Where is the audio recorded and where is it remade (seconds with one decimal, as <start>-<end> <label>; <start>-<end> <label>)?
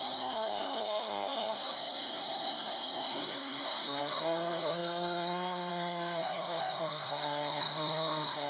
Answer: 0.0-8.5 remade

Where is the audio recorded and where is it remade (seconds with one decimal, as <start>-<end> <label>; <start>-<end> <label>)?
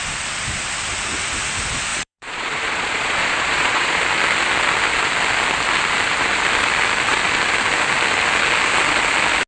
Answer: 0.0-1.9 recorded; 1.9-4.0 remade; 4.0-9.5 recorded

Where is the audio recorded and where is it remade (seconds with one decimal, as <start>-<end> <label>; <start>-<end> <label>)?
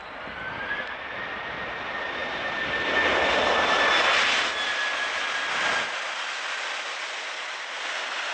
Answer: 0.0-8.3 recorded